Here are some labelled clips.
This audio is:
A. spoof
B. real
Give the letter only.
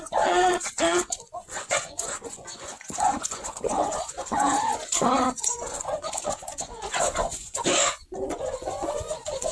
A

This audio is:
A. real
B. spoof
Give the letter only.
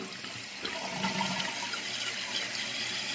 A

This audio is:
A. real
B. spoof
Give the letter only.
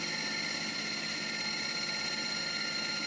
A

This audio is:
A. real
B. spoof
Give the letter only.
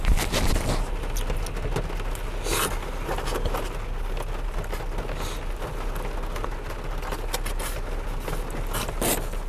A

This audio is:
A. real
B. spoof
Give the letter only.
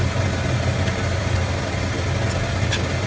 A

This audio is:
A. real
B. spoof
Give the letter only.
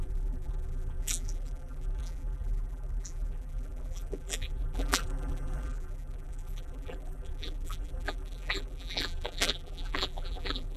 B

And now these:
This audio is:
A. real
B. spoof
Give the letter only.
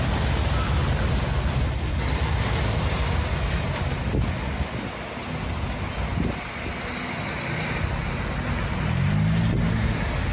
A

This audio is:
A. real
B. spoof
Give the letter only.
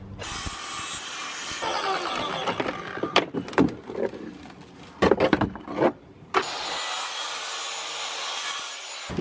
A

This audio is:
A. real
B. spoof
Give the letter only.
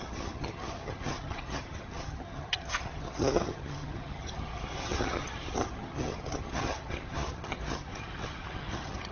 B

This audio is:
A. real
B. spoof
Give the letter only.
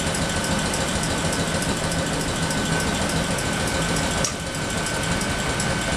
A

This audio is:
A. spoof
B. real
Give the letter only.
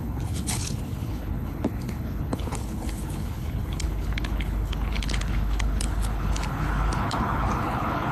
A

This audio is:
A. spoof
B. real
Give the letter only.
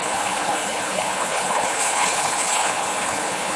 A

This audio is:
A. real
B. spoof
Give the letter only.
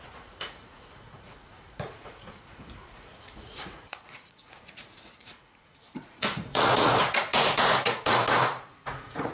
B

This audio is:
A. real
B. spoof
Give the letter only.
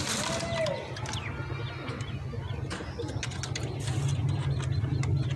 A